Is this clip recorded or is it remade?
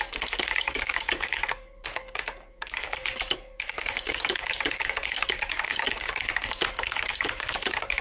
remade